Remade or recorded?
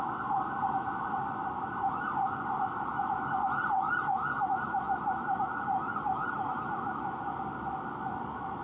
recorded